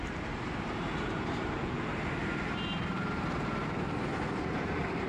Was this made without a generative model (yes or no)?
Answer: no